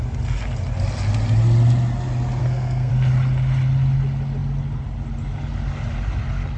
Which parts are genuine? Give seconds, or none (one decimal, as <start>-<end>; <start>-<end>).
0.0-2.4; 2.9-6.6